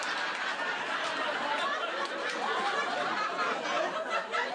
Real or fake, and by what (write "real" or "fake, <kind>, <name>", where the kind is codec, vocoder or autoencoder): real